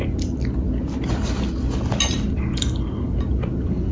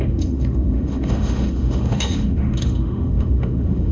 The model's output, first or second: second